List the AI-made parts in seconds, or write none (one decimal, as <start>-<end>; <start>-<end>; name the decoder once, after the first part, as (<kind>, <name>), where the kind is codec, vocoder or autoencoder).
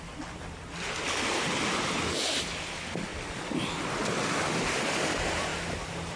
none